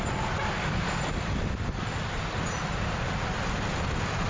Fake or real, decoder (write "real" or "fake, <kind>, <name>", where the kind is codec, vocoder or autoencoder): real